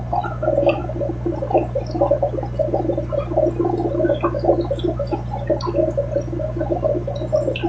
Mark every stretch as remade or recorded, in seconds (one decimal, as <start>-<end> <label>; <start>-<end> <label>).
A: 0.0-7.7 recorded